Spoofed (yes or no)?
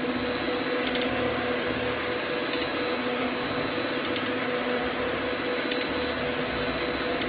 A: no